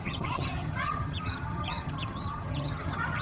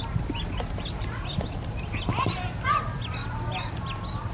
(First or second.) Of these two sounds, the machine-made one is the first